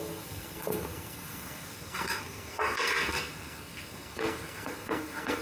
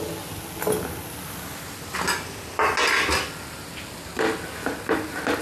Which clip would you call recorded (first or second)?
second